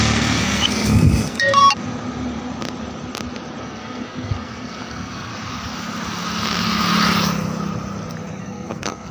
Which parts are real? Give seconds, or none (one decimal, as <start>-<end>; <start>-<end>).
1.6-3.6; 5.3-8.4